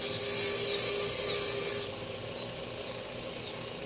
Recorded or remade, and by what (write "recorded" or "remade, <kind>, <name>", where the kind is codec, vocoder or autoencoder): recorded